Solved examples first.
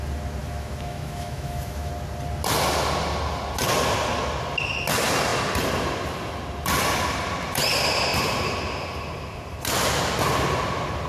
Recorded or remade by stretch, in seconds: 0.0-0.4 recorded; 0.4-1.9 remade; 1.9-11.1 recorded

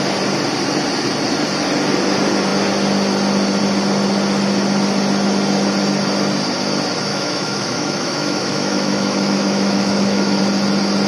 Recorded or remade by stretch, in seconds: 0.0-7.1 recorded; 7.1-10.4 remade; 10.4-11.1 recorded

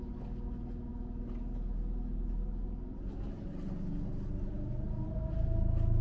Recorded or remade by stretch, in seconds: 0.0-6.0 recorded

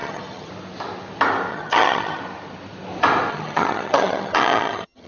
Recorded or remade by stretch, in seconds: 0.0-0.5 remade; 0.5-1.5 recorded; 1.5-2.2 remade; 2.2-3.3 recorded; 3.3-5.1 remade

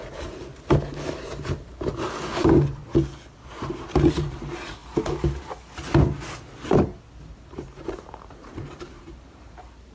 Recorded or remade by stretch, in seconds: 0.0-1.9 remade; 1.9-2.4 recorded; 2.4-2.8 remade; 2.8-3.5 recorded; 3.5-4.8 remade; 4.8-7.2 recorded; 7.2-9.9 remade